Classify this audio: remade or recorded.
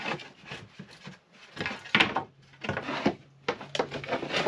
recorded